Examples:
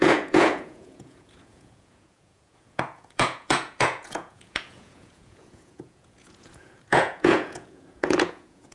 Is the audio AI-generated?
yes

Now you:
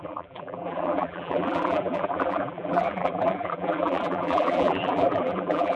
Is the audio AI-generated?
yes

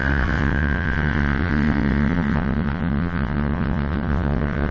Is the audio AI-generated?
yes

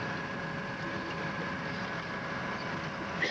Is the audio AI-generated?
no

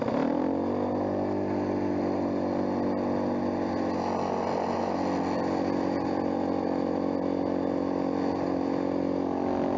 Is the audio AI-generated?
no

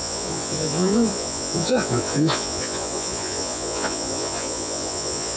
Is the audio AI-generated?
yes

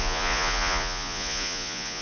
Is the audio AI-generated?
yes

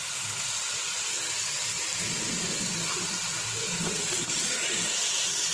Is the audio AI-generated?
yes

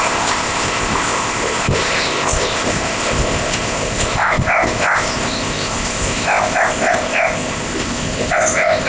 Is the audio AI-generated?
yes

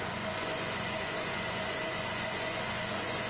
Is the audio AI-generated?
yes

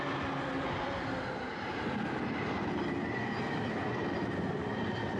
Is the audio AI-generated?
no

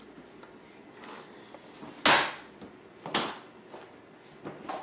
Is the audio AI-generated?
no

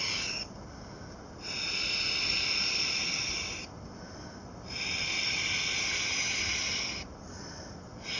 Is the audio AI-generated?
no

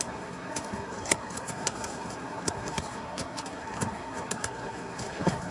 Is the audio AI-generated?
yes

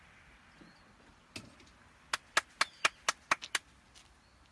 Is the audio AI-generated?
no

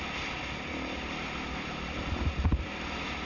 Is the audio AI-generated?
no